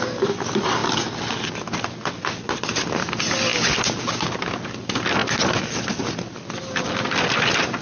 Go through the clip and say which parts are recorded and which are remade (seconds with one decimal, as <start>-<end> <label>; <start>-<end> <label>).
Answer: 0.0-7.8 recorded